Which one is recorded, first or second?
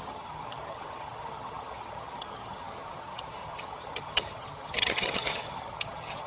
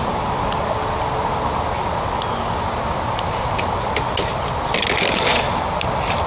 second